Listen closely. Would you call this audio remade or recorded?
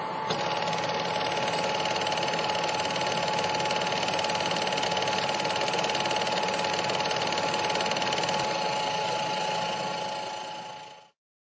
recorded